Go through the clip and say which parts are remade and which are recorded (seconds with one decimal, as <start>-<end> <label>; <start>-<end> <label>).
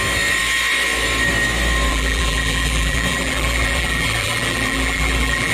0.0-1.9 recorded; 1.9-5.5 remade